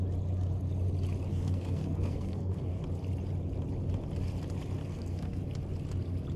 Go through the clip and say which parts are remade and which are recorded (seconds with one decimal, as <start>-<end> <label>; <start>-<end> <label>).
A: 0.0-1.3 recorded; 1.3-2.8 remade; 2.8-4.8 recorded; 4.8-5.4 remade; 5.4-6.4 recorded